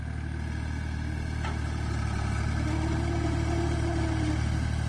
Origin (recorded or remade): recorded